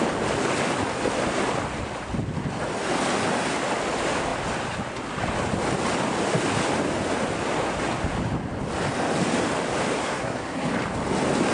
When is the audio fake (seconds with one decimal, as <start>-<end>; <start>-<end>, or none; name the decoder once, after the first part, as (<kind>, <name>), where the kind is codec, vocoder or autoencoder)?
10.0-10.7 (codec, SNAC)